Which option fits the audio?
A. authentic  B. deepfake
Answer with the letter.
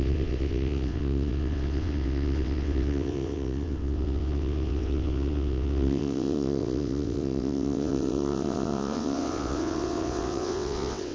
B